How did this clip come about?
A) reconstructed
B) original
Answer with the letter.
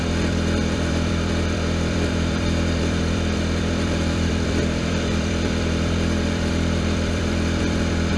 A